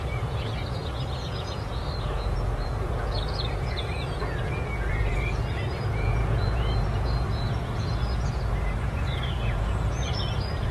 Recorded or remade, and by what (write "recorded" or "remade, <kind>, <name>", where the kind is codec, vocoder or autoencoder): remade, vocoder, Vocos